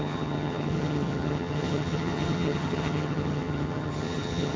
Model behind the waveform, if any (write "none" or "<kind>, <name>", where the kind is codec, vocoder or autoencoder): vocoder, HiFi-GAN